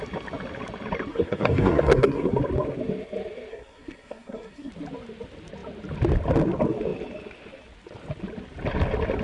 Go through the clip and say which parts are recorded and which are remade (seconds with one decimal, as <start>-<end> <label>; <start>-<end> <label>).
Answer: 0.0-1.1 recorded; 1.1-2.3 remade; 2.3-3.5 recorded; 3.5-4.7 remade; 4.7-9.2 recorded